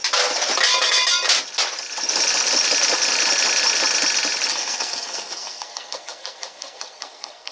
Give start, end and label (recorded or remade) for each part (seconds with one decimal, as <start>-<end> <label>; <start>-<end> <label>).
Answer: 0.0-4.5 recorded; 4.5-7.5 remade